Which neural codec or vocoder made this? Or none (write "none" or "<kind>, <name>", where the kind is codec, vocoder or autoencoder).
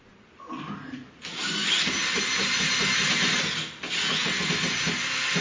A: none